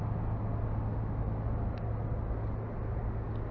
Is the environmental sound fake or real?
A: real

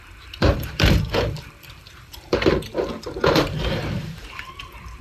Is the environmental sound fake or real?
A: fake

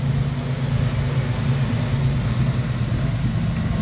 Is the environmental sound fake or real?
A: real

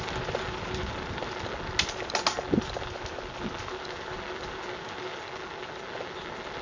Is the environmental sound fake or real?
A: real